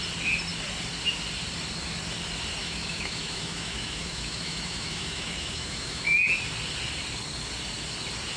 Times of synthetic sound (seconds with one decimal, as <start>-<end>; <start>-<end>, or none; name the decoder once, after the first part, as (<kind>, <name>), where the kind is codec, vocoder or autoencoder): 2.6-6.2 (autoencoder, DAC-VAE)